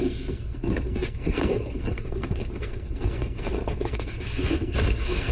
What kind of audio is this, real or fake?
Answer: fake